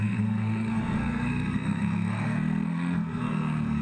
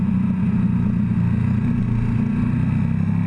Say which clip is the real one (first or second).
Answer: second